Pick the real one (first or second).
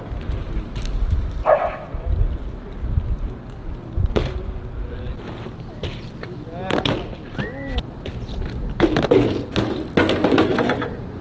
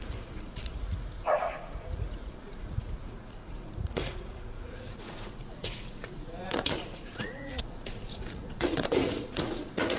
first